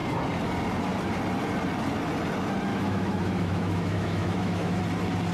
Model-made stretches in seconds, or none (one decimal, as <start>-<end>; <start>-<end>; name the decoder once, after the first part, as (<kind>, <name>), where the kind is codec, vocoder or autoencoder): 2.7-4.8 (autoencoder, DAC-VAE)